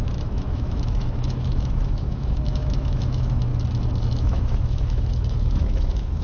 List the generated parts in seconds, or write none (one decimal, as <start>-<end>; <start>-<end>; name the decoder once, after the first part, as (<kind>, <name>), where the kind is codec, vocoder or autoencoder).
0.0-3.5 (autoencoder, DAC-VAE); 4.1-6.2